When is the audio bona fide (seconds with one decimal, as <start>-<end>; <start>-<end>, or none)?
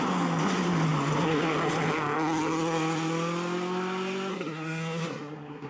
0.0-4.3